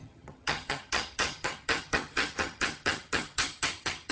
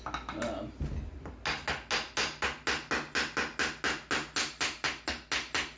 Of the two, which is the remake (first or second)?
first